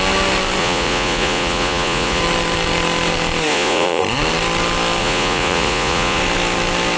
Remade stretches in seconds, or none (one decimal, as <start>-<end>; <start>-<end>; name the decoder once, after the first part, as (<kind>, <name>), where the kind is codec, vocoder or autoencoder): 0.6-2.2 (vocoder, Vocos); 3.5-4.0; 5.0-6.2